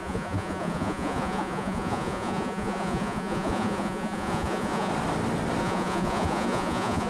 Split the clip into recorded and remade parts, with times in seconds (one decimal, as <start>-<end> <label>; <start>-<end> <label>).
0.0-4.9 remade; 4.9-5.6 recorded; 5.6-7.1 remade